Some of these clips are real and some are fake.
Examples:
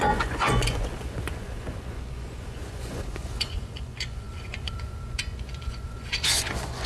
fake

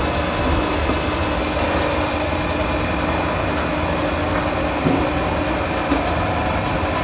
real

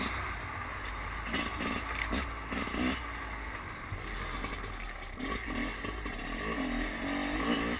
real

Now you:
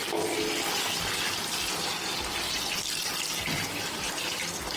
real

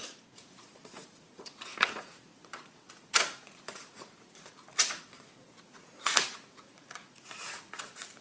fake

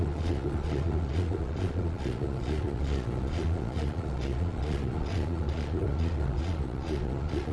fake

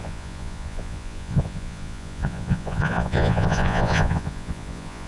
fake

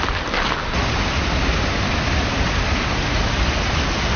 real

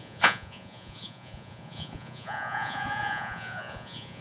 fake